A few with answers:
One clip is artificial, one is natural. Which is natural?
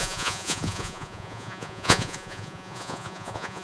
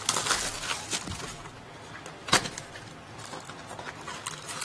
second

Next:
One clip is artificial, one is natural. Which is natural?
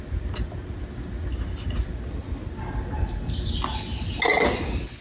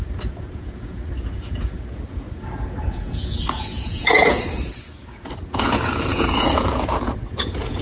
first